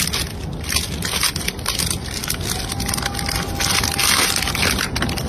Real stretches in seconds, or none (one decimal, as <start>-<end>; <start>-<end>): 0.0-5.3